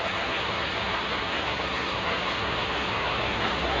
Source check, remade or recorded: remade